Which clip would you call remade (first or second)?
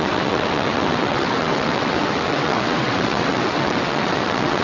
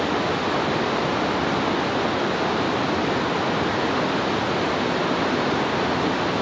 first